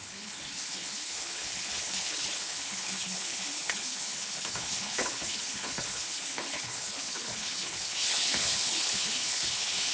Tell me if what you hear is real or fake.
fake